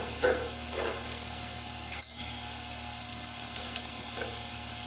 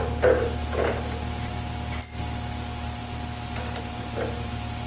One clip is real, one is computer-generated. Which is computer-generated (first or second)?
first